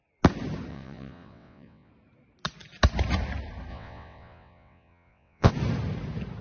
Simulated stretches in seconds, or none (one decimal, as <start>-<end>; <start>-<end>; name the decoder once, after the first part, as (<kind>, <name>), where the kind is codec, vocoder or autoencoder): 0.7-1.9 (vocoder, WaveNeXt); 3.7-5.5

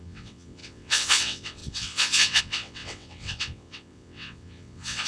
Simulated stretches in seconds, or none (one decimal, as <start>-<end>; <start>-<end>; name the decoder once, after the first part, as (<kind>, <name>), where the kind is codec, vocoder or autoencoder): 0.0-5.1 (vocoder, WaveNeXt)

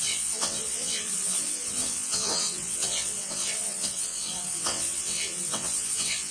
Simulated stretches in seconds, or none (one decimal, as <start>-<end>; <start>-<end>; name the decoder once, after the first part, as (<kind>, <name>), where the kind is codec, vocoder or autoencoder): 0.0-6.3 (vocoder, WaveNeXt)

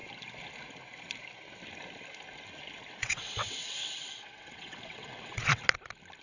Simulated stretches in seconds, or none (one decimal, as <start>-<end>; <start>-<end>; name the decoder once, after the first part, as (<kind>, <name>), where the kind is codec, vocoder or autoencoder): 3.0-5.6 (vocoder, WaveNeXt)

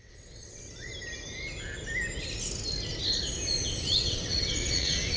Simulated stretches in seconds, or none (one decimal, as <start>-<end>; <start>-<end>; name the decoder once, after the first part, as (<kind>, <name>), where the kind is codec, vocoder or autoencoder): 0.0-0.9 (vocoder, WaveNeXt); 3.7-5.2